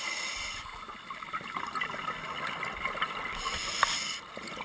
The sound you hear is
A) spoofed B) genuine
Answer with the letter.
B